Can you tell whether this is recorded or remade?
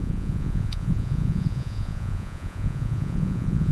remade